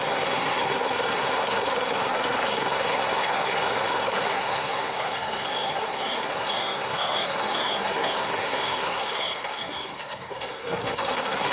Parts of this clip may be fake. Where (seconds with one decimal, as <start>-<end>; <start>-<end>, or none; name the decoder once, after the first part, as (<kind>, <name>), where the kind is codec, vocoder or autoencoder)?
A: 0.0-11.5 (codec, SNAC)